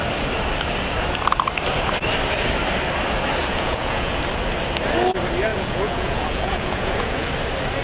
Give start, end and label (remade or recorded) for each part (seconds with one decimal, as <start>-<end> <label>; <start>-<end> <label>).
0.0-3.4 recorded; 3.4-4.2 remade; 4.2-5.5 recorded; 5.5-7.3 remade; 7.3-7.8 recorded